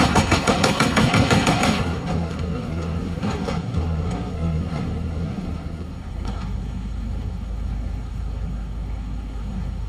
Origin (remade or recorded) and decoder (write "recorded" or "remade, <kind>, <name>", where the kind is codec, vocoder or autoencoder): remade, codec, SNAC